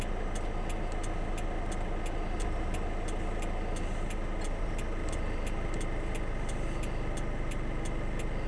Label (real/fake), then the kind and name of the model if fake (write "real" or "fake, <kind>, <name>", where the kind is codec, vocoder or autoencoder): real